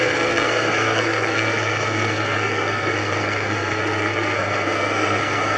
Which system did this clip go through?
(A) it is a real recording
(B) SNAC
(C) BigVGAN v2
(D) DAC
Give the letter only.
B